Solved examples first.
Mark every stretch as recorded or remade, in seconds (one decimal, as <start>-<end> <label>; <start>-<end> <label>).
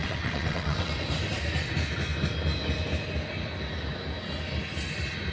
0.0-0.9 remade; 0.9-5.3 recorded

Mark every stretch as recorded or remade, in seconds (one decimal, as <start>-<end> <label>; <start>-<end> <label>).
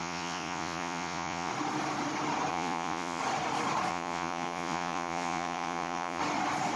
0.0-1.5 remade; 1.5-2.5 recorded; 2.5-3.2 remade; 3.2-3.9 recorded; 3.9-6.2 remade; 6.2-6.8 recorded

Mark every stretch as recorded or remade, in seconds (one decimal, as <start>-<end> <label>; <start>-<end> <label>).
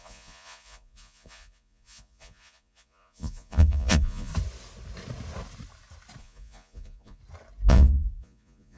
0.0-4.3 remade; 4.3-6.2 recorded; 6.2-7.2 remade; 7.2-7.7 recorded; 7.7-8.8 remade